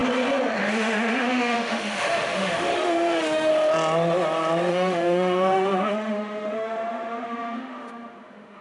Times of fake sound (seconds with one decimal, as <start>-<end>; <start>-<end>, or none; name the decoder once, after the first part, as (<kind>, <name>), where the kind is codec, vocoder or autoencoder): 0.6-3.5 (autoencoder, DAC-VAE); 4.7-8.6